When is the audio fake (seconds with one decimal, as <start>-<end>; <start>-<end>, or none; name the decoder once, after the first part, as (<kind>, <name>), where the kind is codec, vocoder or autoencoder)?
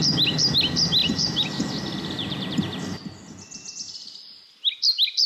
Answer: 1.0-3.0 (vocoder, BigVGAN v2)